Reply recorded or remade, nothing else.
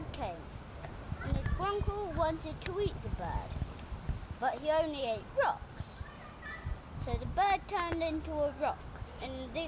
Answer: recorded